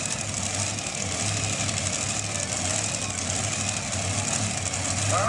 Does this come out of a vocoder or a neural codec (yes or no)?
no